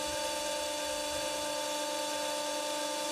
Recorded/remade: recorded